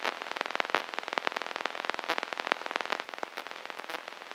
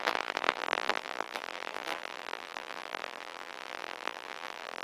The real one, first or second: first